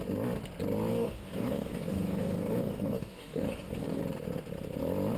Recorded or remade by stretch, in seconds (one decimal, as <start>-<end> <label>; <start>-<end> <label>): 0.0-0.9 recorded; 0.9-4.0 remade; 4.0-5.2 recorded